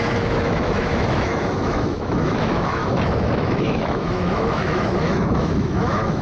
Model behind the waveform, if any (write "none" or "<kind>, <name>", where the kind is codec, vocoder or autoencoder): autoencoder, DAC-VAE